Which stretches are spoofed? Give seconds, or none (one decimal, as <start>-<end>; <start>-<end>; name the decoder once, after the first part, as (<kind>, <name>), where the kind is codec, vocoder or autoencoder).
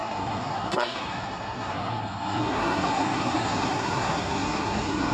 0.0-5.1 (codec, SNAC)